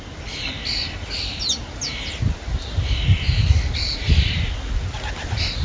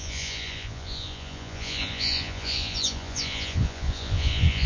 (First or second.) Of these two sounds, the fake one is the second